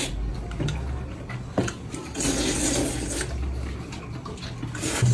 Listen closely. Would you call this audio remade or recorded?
recorded